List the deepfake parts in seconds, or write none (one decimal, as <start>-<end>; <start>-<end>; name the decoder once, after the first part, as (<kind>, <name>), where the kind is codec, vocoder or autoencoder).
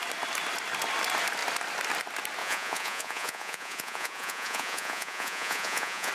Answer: 2.4-6.1 (vocoder, Vocos)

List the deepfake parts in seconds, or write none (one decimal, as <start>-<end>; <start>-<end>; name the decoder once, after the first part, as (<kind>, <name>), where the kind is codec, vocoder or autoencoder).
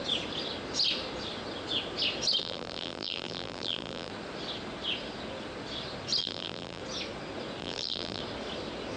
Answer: 2.4-4.1 (vocoder, BigVGAN v2); 6.2-6.8; 7.6-8.2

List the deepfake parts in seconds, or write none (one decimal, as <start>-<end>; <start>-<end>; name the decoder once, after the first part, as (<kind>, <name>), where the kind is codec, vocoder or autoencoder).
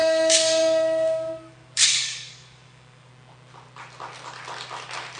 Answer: 0.0-3.1 (codec, DAC)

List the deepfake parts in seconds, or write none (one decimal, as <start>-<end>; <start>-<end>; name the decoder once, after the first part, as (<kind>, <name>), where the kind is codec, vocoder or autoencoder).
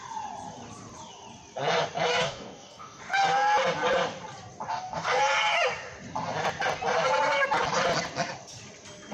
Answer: 2.1-3.0 (codec, DAC); 4.7-5.2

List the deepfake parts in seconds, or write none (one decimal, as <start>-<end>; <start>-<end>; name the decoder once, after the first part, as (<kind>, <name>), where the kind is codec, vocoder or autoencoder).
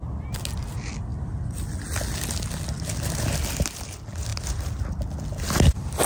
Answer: none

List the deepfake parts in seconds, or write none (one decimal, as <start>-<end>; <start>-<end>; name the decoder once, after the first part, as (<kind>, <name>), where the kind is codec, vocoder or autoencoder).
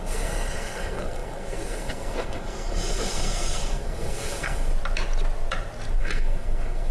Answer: 0.0-4.7 (codec, SNAC); 6.0-6.9